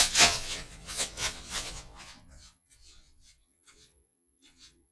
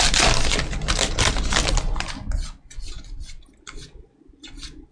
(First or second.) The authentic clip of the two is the second